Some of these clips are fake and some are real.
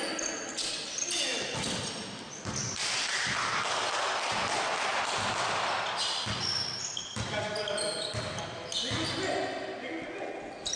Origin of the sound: real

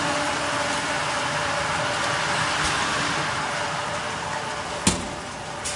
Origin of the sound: real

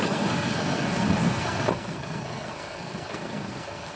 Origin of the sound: fake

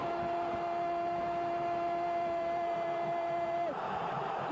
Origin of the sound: fake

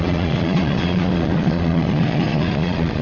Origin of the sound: fake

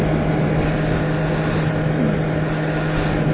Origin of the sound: real